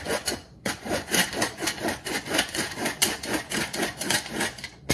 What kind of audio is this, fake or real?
fake